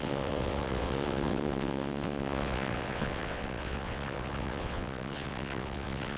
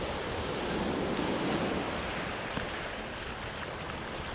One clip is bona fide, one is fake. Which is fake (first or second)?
first